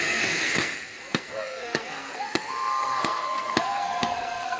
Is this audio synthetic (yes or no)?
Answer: yes